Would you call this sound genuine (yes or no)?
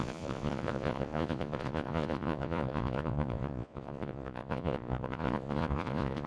no